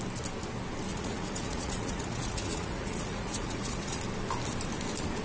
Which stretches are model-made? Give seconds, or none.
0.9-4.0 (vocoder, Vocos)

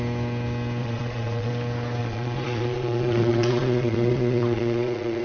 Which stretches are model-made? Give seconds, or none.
0.8-1.5 (vocoder, Vocos); 2.0-5.2

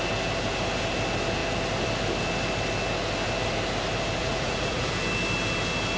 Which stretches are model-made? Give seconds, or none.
4.2-4.9 (vocoder, Vocos)